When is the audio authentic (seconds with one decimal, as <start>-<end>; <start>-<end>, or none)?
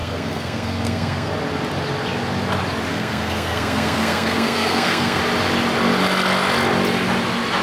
1.3-2.9; 5.2-7.6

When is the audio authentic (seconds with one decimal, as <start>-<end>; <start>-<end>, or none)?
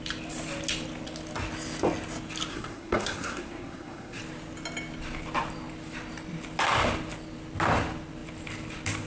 0.0-2.5; 4.2-9.1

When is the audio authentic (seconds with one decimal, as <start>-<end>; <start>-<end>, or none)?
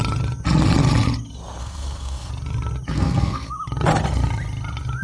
0.0-1.6; 2.3-2.9; 3.5-5.0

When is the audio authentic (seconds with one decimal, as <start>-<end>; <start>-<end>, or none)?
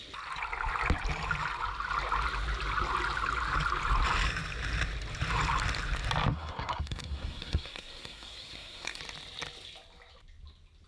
0.0-6.3; 9.0-10.9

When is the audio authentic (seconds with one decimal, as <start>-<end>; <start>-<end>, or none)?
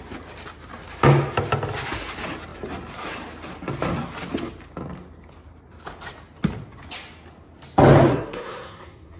0.0-8.1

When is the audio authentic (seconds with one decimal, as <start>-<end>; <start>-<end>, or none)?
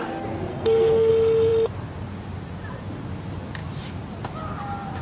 0.0-0.5; 1.1-5.0